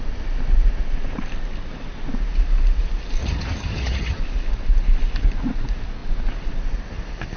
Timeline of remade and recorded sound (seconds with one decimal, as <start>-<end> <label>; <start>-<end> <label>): 0.0-3.2 recorded; 3.2-4.2 remade; 4.2-7.4 recorded